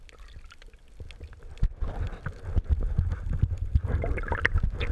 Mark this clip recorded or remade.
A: recorded